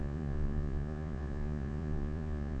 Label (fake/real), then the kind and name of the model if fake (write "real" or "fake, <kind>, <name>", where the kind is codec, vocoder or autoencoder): fake, vocoder, Vocos